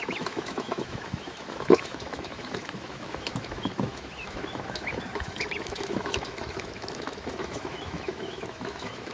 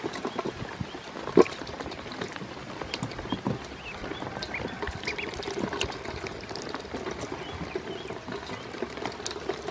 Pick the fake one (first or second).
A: first